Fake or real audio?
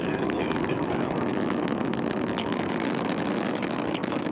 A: fake